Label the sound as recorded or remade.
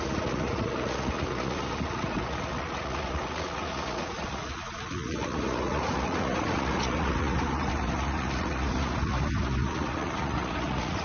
remade